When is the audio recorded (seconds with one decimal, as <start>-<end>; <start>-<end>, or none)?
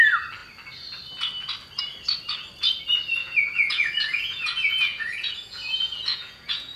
0.0-3.2